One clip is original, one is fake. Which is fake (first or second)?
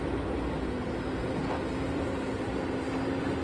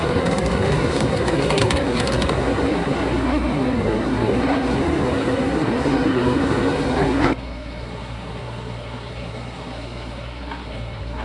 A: second